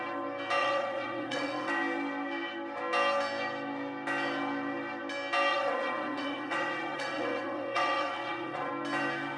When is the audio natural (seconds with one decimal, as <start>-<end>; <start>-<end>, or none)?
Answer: 0.0-0.6; 1.7-5.5; 8.7-9.4